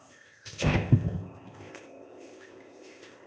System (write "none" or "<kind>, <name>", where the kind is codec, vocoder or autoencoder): codec, ZipCodec